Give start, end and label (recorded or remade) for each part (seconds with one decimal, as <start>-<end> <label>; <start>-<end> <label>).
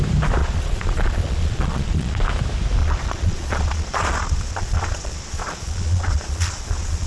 0.0-0.4 recorded; 0.4-2.2 remade; 2.2-2.8 recorded; 2.8-7.1 remade